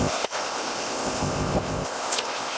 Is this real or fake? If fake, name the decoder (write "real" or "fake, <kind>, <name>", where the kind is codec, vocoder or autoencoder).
fake, codec, ZipCodec